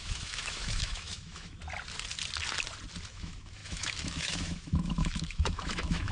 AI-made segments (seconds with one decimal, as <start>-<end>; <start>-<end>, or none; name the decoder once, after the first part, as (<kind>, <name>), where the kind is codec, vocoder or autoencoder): 0.0-1.6 (autoencoder, DAC-VAE); 3.1-6.1